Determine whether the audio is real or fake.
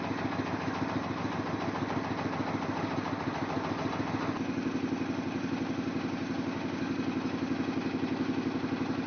real